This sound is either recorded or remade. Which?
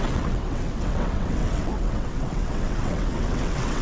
remade